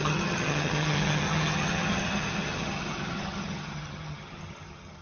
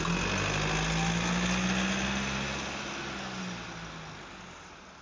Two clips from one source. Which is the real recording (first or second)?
second